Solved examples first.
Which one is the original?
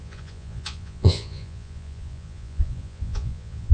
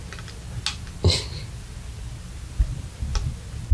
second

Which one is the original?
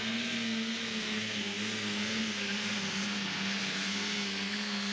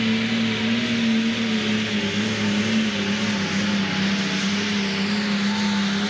second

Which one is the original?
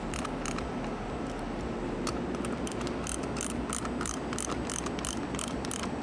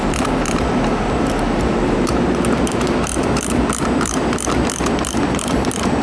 first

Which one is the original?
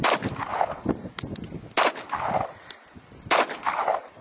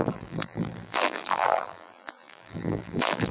first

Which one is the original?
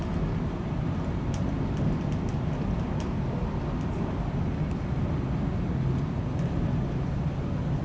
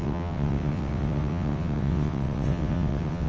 first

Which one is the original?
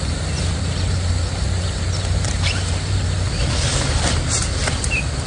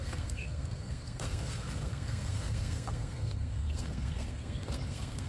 first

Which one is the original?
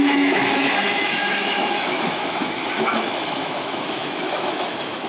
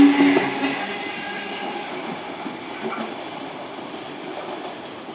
second